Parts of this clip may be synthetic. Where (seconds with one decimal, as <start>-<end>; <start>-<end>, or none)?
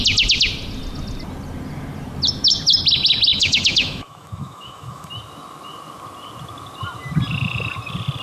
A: 3.3-5.1